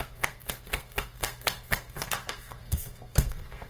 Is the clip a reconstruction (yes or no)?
yes